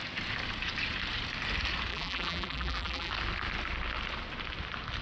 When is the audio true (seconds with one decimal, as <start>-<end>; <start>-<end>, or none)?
0.0-1.9; 3.1-5.0